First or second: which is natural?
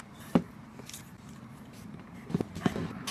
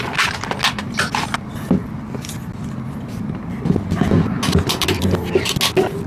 second